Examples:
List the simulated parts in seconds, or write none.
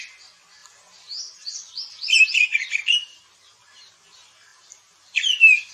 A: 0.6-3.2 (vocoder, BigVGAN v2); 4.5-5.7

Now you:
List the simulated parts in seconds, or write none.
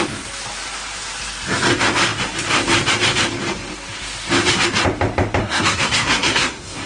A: 5.4-6.9 (codec, SNAC)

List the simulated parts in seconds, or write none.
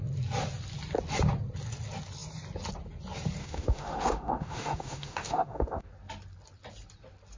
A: 3.4-5.9 (autoencoder, DAC-VAE)